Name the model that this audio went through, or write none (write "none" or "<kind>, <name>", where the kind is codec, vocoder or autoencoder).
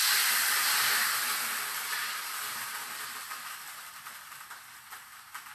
none